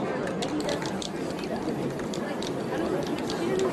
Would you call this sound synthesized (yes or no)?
no